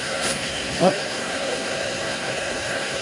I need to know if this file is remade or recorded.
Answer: remade